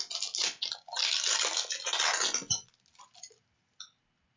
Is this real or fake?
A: real